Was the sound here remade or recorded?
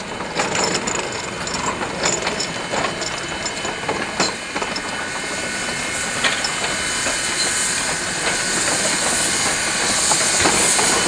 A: recorded